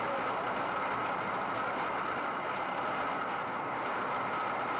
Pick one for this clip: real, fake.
real